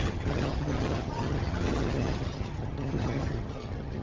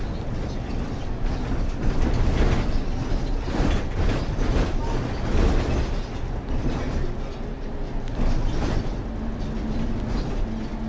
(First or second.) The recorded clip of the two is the second